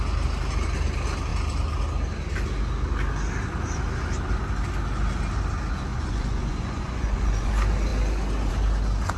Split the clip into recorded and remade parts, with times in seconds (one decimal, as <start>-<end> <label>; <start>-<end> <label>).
0.0-5.9 recorded; 5.9-7.5 remade; 7.5-9.2 recorded